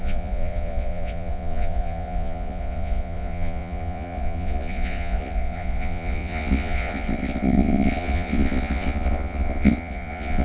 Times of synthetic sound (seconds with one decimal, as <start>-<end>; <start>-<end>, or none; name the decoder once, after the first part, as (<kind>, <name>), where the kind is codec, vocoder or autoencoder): 0.0-10.4 (vocoder, Vocos)